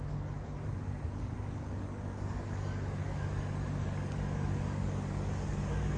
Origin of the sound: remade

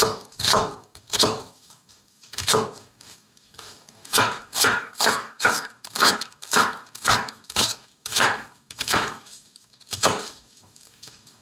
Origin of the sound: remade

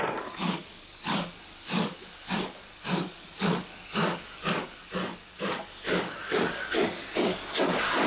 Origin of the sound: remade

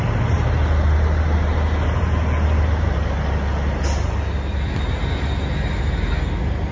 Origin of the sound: recorded